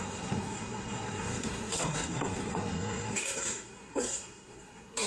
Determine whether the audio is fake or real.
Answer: fake